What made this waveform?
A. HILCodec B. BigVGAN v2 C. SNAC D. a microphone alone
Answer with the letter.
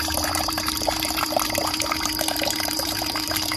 B